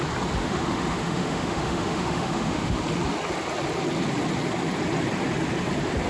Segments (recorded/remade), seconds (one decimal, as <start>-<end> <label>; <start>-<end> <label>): 0.0-0.4 recorded; 0.4-2.8 remade; 2.8-6.1 recorded

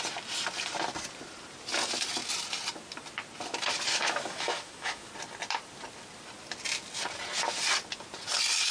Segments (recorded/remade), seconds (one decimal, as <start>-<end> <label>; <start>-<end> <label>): 0.0-3.9 recorded; 3.9-5.1 remade; 5.1-8.7 recorded

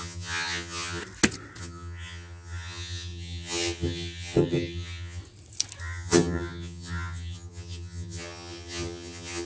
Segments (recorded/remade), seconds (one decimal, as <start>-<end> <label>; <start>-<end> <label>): 0.0-1.0 remade; 1.0-1.6 recorded; 1.6-5.2 remade; 5.2-5.8 recorded; 5.8-9.5 remade

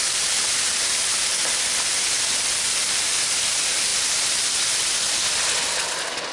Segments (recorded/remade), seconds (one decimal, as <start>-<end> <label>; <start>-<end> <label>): 0.0-6.3 recorded

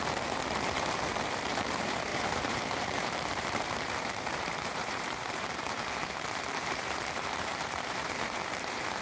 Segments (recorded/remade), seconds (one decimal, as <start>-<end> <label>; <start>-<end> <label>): 0.0-9.0 remade